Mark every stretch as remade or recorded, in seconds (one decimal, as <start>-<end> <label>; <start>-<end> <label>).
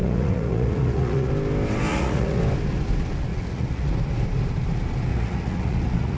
0.0-1.3 remade; 1.3-1.9 recorded; 1.9-2.4 remade; 2.4-3.3 recorded; 3.3-3.9 remade; 3.9-5.1 recorded; 5.1-6.2 remade